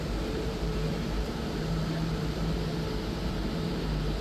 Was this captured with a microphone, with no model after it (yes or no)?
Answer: no